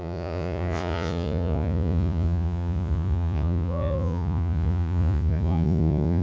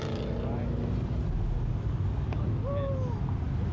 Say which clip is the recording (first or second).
second